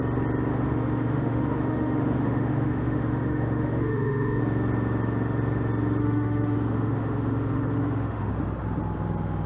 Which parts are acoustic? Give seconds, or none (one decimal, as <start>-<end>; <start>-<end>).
0.0-0.5; 4.4-6.0; 8.3-9.5